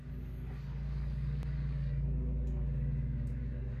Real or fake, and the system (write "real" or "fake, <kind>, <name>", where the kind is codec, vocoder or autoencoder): fake, codec, DAC